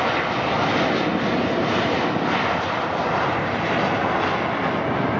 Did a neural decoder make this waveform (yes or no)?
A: no